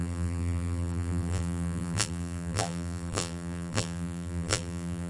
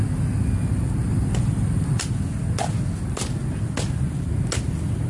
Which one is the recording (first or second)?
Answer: second